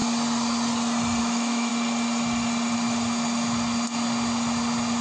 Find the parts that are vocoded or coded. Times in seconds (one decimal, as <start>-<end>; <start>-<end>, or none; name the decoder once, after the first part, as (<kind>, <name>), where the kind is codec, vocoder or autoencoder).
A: 1.2-1.7 (autoencoder, DAC-VAE)

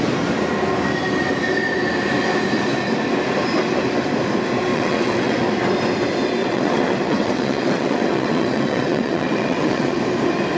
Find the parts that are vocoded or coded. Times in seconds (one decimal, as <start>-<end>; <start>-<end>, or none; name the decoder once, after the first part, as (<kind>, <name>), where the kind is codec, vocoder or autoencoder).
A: 4.7-5.4 (vocoder, WaveNeXt); 6.4-10.0

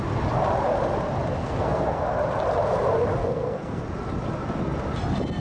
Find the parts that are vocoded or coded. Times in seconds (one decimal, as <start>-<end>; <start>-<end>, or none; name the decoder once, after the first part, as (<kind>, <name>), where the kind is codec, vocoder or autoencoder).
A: 1.4-2.0 (codec, SNAC); 3.2-3.8